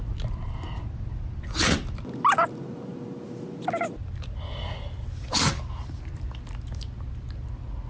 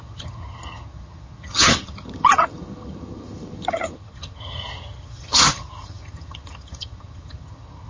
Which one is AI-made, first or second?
second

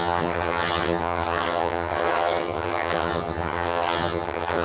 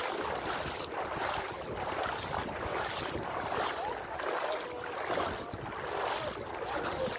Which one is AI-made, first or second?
first